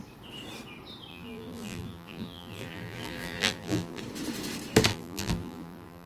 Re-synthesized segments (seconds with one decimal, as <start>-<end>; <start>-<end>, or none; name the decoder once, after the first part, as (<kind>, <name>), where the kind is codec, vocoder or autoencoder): 1.1-4.0 (vocoder, BigVGAN v2); 4.9-6.1